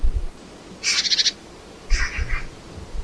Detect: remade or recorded recorded